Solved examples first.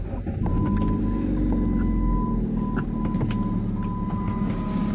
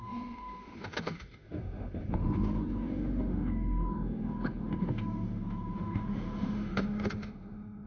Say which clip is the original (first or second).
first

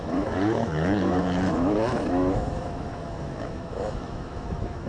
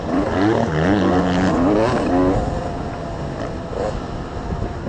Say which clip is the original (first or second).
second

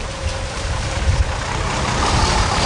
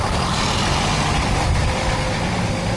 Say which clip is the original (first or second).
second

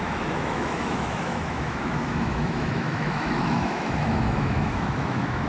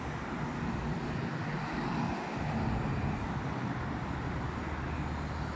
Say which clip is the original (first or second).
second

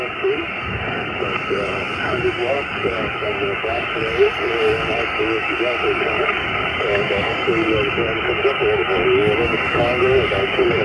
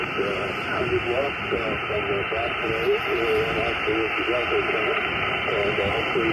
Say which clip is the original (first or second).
second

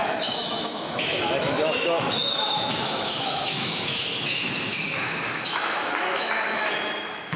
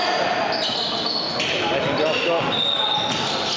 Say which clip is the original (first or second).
second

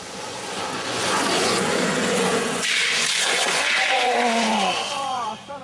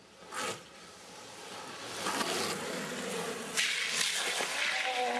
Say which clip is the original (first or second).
second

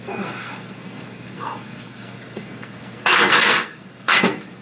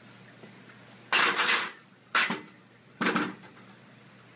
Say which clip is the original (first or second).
second